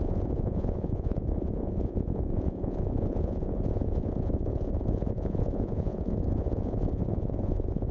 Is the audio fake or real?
fake